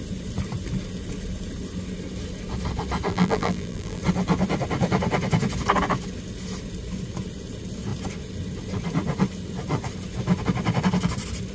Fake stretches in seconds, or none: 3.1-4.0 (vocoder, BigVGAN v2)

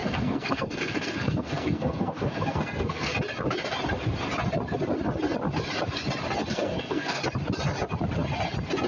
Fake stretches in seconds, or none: 0.0-3.1 (codec, SNAC); 6.5-7.2

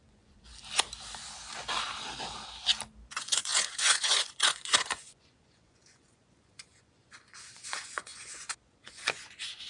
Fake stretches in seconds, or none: 0.0-0.5 (vocoder, Vocos); 3.1-9.7

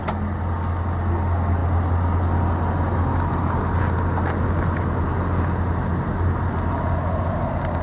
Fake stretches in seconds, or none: none

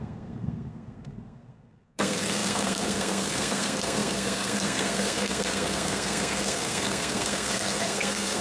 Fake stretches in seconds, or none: 0.0-8.4 (codec, SNAC)

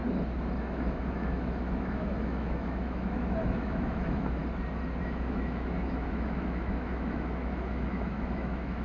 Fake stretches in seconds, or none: 0.6-4.4 (autoencoder, DAC-VAE); 5.0-8.8